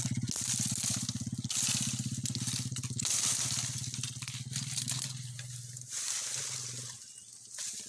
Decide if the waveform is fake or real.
real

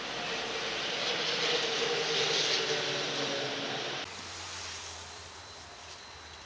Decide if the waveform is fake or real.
real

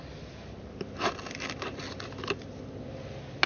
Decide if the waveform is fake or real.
real